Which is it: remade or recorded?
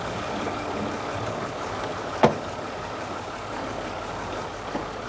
remade